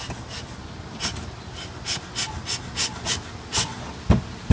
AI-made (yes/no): no